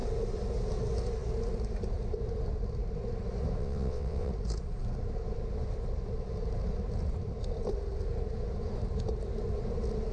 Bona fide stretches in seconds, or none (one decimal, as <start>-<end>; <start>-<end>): 0.0-3.6; 4.3-10.1